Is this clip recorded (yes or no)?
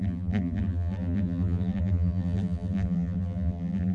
no